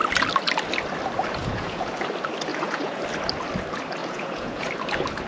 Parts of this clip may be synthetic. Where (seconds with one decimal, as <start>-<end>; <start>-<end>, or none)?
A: 1.4-1.9; 2.5-3.0; 4.0-4.7